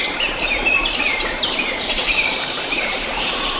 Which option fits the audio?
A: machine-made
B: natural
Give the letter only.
A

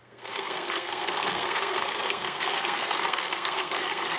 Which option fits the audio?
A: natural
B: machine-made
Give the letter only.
B